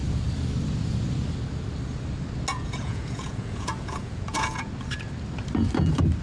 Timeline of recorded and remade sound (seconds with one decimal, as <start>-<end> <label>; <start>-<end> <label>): 0.0-2.5 recorded; 2.5-4.7 remade; 4.7-6.2 recorded